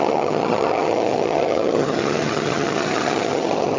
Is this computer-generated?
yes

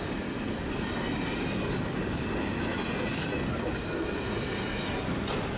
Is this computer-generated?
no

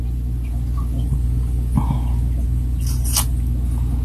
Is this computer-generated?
no